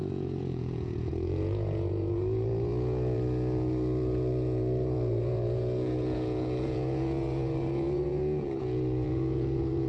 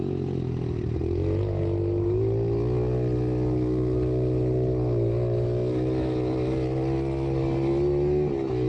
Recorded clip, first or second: second